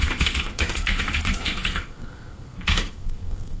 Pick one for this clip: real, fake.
fake